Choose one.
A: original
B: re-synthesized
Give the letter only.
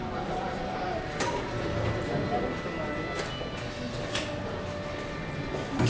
A